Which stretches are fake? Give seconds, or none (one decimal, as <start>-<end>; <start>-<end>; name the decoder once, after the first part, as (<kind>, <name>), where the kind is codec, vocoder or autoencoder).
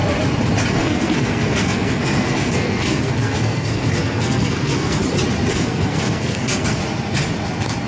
0.7-5.0 (codec, SNAC); 5.5-6.8